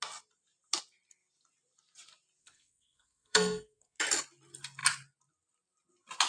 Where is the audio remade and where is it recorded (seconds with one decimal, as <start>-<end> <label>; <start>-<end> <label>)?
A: 0.0-2.4 recorded; 2.4-4.0 remade; 4.0-6.3 recorded